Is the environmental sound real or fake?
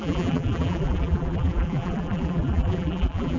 fake